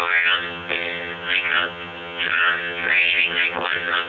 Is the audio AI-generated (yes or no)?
yes